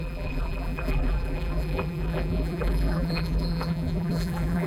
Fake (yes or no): yes